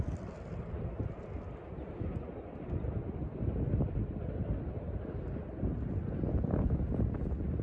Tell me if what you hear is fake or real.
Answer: real